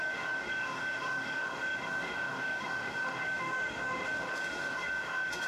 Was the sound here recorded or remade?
remade